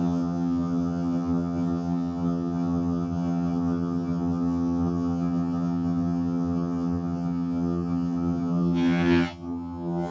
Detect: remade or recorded remade